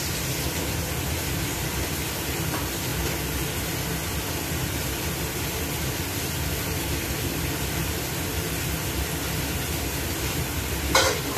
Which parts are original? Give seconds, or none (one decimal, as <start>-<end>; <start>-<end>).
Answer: 2.9-3.7